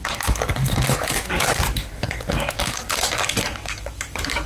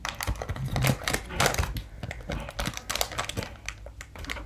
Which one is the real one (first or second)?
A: second